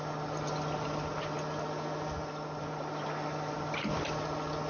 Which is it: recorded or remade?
recorded